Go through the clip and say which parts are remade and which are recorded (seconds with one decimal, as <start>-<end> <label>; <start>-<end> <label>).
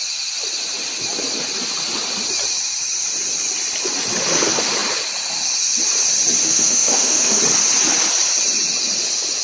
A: 0.0-6.4 recorded; 6.4-7.4 remade; 7.4-9.4 recorded